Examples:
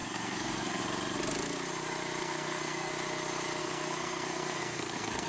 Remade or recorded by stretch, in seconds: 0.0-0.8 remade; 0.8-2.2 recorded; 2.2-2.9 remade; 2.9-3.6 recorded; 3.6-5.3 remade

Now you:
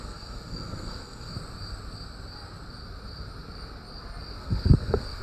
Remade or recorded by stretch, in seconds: 0.0-1.3 remade; 1.3-4.4 recorded; 4.4-5.2 remade

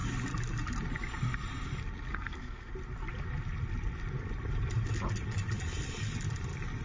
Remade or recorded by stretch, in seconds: 0.0-2.1 recorded; 2.1-2.7 remade; 2.7-6.8 recorded

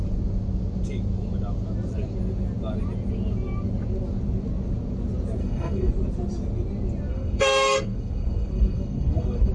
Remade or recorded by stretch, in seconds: 0.0-5.4 recorded; 5.4-5.9 remade; 5.9-7.1 recorded; 7.1-9.5 remade

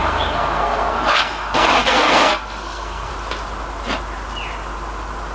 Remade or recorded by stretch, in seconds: 0.0-3.1 remade; 3.1-5.3 recorded

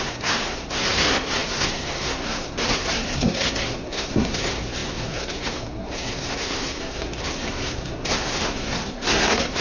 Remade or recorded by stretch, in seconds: 0.0-9.6 remade

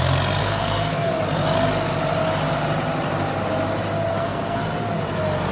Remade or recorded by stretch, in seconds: 0.0-0.4 recorded; 0.4-1.1 remade; 1.1-4.1 recorded; 4.1-4.6 remade; 4.6-5.5 recorded

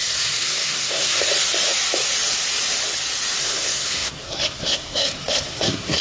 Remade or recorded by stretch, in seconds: 0.0-1.3 remade; 1.3-3.4 recorded; 3.4-6.0 remade